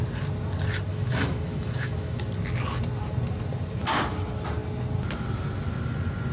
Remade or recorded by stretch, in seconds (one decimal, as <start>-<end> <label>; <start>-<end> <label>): 0.0-0.9 recorded; 0.9-2.2 remade; 2.2-6.3 recorded